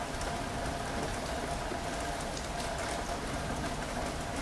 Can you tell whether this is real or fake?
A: real